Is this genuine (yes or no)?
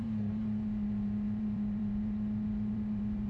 no